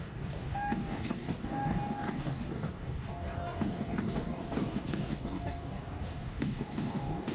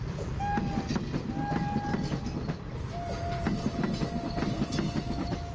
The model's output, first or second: first